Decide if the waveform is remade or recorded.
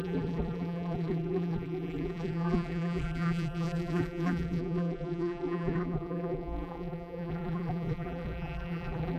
remade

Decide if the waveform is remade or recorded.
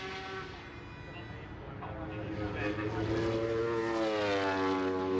recorded